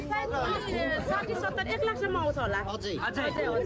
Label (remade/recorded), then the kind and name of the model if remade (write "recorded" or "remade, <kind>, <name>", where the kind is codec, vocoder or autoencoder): recorded